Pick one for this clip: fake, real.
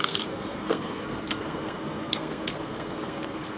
fake